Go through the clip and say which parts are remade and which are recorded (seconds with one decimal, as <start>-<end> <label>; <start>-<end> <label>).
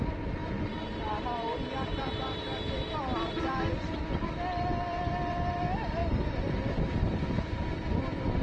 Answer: 0.0-0.4 recorded; 0.4-3.7 remade; 3.7-6.0 recorded; 6.0-7.6 remade; 7.6-8.4 recorded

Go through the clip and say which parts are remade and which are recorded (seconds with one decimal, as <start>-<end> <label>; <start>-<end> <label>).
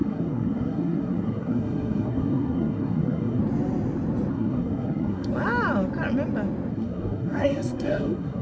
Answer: 0.0-3.4 remade; 3.4-4.3 recorded; 4.3-5.3 remade; 5.3-6.7 recorded; 6.7-8.4 remade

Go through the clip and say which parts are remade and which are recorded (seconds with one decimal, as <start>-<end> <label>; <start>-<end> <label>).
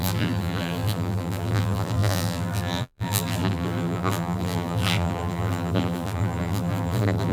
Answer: 0.0-7.3 remade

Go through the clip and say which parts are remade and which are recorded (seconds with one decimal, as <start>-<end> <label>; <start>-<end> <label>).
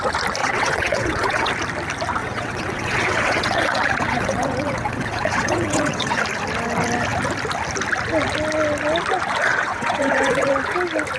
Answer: 0.0-0.4 recorded; 0.4-1.5 remade; 1.5-2.2 recorded; 2.2-6.2 remade; 6.2-9.5 recorded; 9.5-10.5 remade; 10.5-11.2 recorded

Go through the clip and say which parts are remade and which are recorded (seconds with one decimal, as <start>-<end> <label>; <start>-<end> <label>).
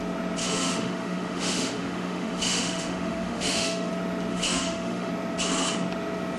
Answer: 0.0-0.4 recorded; 0.4-3.9 remade; 3.9-4.3 recorded; 4.3-5.1 remade; 5.1-6.4 recorded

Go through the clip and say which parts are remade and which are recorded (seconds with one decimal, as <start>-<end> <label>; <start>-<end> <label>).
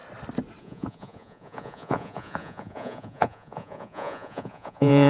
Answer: 0.0-0.6 recorded; 0.6-5.1 remade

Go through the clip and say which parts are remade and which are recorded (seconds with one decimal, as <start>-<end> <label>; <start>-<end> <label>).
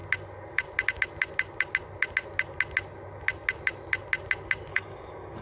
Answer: 0.0-4.7 recorded; 4.7-5.4 remade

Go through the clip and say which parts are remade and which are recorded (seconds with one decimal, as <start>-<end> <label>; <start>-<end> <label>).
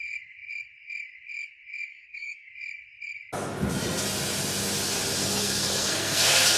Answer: 0.0-1.9 recorded; 1.9-2.5 remade; 2.5-5.2 recorded; 5.2-6.6 remade